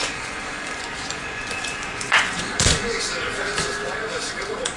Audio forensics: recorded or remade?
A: remade